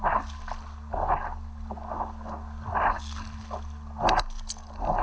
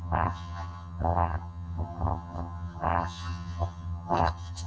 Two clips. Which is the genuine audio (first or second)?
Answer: first